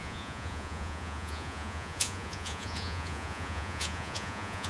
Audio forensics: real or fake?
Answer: fake